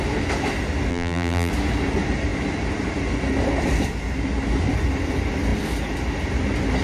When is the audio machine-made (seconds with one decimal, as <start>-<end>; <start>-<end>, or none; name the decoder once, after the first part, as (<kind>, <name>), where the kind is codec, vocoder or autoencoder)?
0.9-1.5 (vocoder, BigVGAN v2)